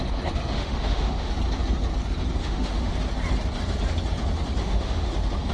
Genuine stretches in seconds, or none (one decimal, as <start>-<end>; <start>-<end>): 0.0-0.5; 1.3-2.4; 2.9-4.6; 5.1-5.5